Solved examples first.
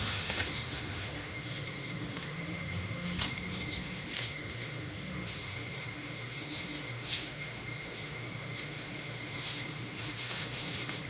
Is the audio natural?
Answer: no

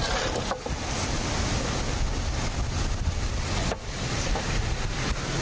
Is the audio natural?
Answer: yes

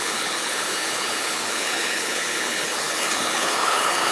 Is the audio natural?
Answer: no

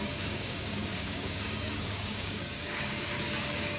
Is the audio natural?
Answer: no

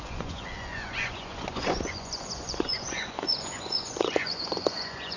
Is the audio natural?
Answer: no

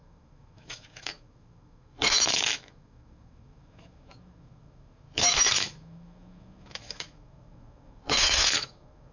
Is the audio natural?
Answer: no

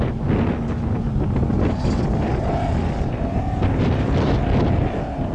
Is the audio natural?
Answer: yes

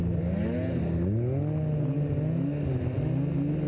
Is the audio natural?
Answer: yes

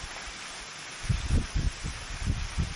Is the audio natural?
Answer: yes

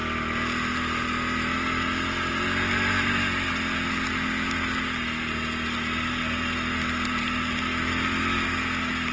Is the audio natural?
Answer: yes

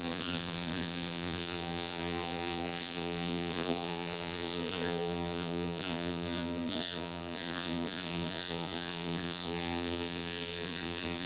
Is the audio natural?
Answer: no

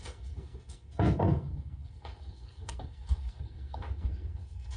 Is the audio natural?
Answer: no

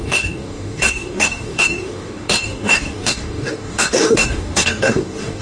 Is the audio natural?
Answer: no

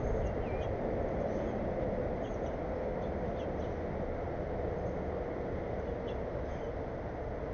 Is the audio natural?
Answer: yes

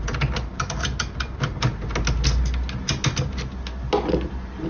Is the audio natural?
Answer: yes